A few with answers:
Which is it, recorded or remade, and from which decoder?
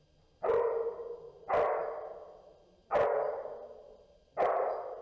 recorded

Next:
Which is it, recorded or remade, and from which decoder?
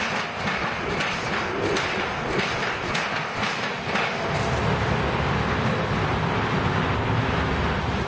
recorded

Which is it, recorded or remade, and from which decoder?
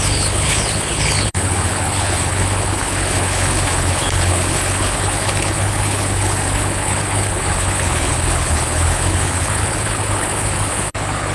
remade, codec, HILCodec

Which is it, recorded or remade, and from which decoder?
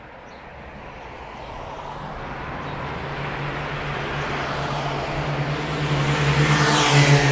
recorded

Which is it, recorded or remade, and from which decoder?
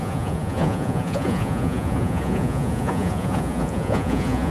remade, vocoder, Vocos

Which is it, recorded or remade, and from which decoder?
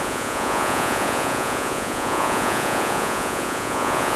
remade, vocoder, Vocos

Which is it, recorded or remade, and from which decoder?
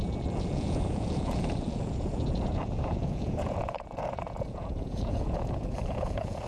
remade, vocoder, Vocos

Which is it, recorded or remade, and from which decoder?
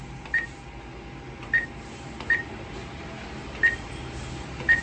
recorded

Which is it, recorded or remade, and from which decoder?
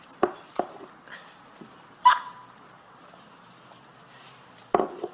recorded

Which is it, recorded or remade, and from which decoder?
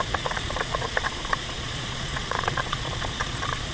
remade, vocoder, Vocos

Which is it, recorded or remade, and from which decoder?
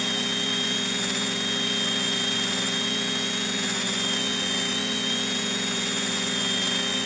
remade, vocoder, Vocos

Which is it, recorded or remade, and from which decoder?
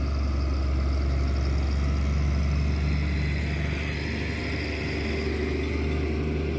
recorded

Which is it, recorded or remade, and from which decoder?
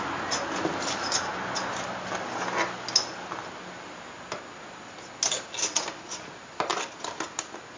recorded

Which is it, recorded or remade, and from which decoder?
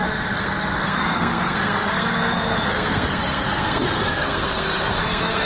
remade, codec, SNAC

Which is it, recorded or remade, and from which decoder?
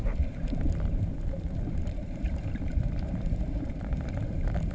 remade, vocoder, BigVGAN v2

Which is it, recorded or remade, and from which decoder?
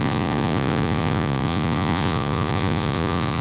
remade, vocoder, Vocos